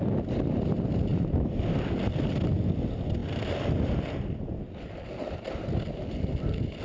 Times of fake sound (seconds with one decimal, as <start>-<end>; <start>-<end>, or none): none